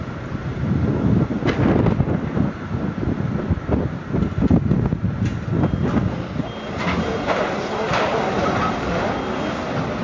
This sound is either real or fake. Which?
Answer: real